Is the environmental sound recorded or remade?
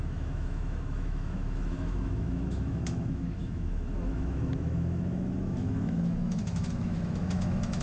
remade